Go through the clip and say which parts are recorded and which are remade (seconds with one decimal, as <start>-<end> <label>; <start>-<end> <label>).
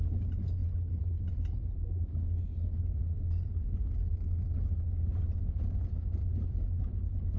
0.0-7.4 recorded